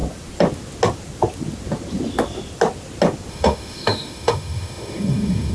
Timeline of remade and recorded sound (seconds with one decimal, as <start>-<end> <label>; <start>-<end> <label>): 0.0-3.3 recorded; 3.3-5.5 remade